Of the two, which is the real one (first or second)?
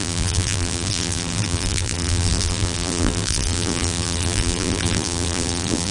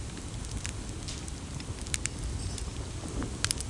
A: second